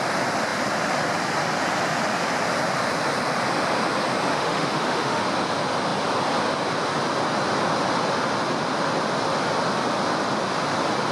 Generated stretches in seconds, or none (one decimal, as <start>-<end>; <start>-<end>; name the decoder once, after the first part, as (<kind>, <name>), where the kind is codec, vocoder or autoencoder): 4.3-5.2 (autoencoder, DAC-VAE)